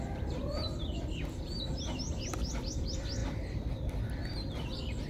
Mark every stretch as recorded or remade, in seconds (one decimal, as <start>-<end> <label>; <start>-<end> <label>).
0.0-5.1 recorded